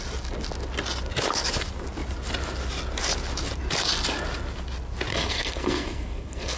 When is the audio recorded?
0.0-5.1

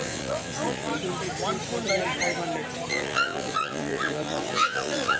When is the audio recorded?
0.9-2.9